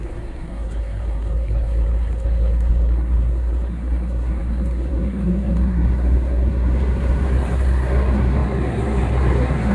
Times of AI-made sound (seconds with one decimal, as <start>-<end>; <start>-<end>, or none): 0.0-9.7

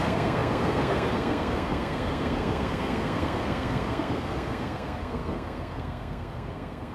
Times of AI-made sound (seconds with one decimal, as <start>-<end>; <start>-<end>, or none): 0.0-6.9